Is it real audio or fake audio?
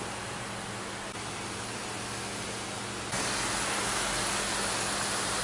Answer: real